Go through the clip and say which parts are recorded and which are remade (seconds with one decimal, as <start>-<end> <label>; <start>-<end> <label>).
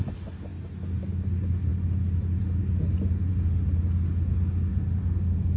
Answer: 0.0-5.6 recorded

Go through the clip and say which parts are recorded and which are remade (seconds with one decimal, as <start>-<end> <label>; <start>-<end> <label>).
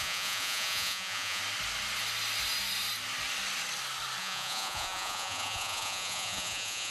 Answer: 0.0-1.4 remade; 1.4-4.2 recorded; 4.2-6.9 remade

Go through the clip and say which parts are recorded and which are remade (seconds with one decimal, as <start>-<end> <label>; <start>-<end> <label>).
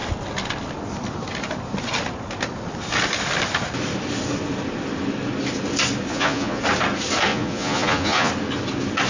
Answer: 0.0-6.1 recorded; 6.1-6.6 remade; 6.6-7.3 recorded; 7.3-8.3 remade; 8.3-9.1 recorded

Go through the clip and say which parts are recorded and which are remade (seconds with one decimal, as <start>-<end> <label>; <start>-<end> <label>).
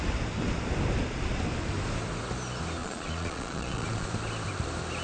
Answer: 0.0-2.8 recorded; 2.8-4.1 remade; 4.1-5.0 recorded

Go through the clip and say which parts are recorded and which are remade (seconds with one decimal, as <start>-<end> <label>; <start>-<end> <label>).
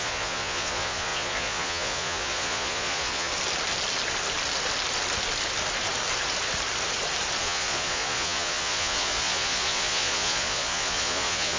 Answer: 0.0-3.3 remade; 3.3-7.4 recorded; 7.4-11.6 remade